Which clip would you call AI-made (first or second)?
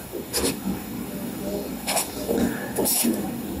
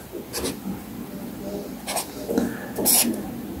first